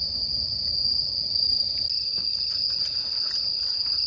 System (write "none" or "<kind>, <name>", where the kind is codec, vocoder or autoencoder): none